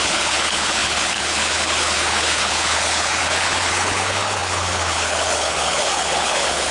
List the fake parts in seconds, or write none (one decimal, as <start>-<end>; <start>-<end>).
0.0-6.7